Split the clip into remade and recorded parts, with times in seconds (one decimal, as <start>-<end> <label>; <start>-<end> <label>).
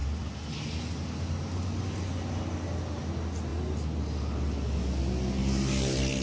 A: 0.0-6.2 recorded